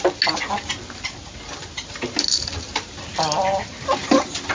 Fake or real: real